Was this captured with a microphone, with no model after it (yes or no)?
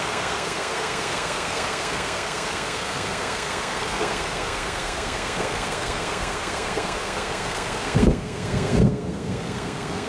no